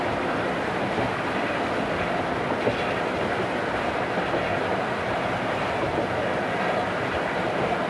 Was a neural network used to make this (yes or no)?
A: no